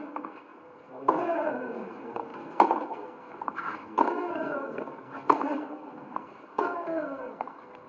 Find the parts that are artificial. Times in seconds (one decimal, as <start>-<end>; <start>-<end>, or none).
0.0-7.9